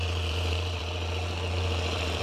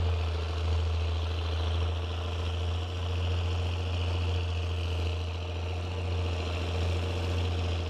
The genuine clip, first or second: second